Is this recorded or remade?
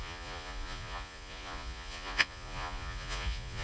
remade